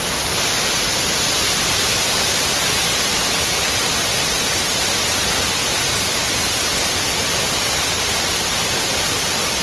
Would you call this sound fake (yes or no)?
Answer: no